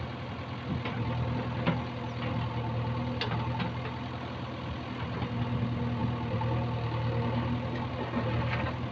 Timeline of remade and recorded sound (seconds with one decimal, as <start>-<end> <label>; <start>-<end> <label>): 0.0-8.9 recorded